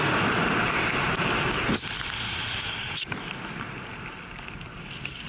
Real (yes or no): yes